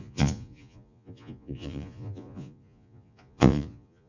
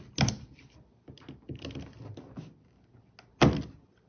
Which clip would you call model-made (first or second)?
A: first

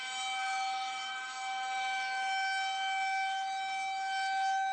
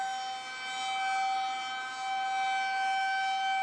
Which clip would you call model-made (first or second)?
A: first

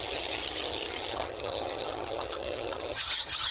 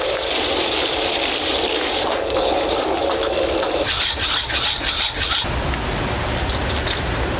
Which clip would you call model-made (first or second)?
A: first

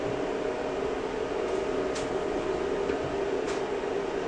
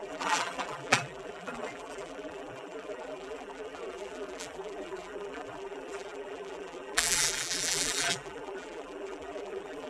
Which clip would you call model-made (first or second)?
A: second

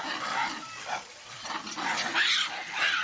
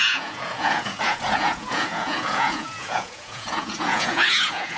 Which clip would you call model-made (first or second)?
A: second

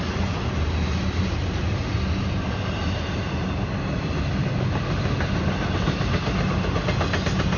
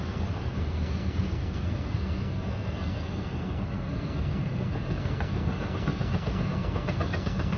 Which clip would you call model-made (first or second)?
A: second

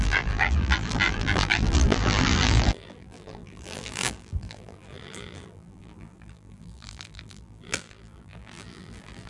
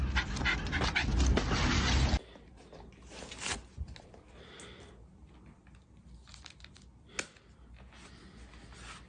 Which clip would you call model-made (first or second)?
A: first